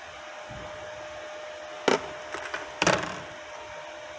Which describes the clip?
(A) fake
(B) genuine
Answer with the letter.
B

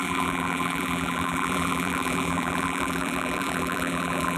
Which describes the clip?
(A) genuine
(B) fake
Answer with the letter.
B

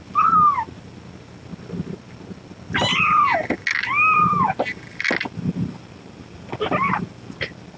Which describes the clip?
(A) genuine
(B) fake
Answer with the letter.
A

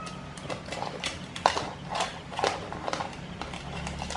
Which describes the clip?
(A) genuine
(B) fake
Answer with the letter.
A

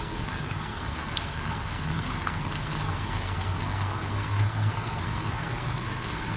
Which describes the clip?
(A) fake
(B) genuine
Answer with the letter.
A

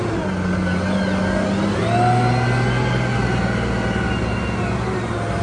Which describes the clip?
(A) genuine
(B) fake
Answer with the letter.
A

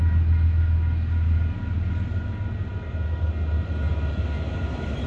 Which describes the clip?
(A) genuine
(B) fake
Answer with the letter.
A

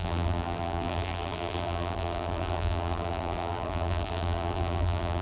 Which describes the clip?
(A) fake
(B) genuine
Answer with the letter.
A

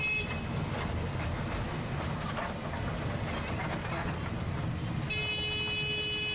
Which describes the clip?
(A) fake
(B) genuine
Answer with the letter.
B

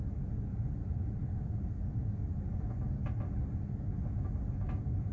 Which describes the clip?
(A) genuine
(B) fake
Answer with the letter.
A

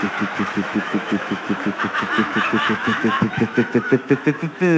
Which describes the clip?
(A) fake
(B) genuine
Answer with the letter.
A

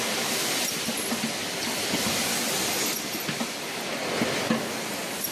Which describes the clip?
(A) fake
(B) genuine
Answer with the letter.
B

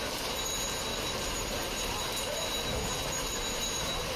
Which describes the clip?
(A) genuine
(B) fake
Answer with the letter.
A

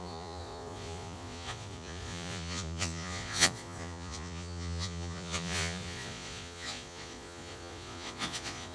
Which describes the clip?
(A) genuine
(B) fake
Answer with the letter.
B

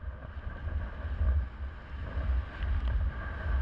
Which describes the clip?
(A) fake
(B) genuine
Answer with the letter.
B